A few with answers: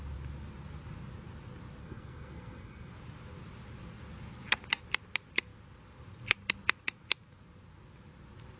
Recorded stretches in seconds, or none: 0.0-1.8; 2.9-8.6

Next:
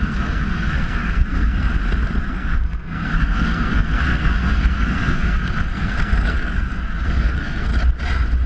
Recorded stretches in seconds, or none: 1.7-2.2; 7.7-8.5

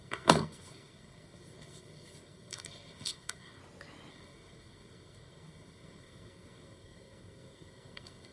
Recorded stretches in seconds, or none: 3.6-4.1

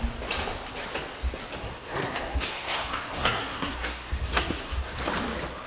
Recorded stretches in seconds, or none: 0.0-1.6; 5.0-5.7